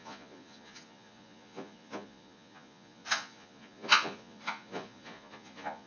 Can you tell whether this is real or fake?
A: fake